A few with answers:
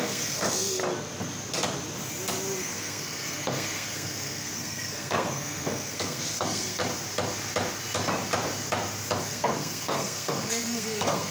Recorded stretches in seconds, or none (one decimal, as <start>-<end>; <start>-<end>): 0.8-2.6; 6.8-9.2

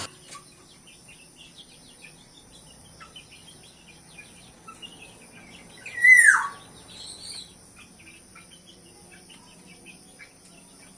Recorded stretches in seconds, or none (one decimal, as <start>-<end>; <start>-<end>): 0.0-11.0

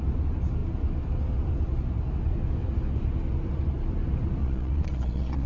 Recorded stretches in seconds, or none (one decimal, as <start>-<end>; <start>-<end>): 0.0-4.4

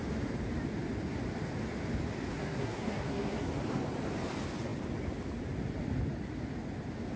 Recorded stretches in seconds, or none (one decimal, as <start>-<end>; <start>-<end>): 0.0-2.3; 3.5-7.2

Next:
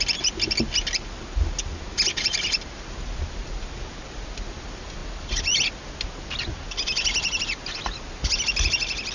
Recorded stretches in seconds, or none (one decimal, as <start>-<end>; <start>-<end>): 0.0-9.1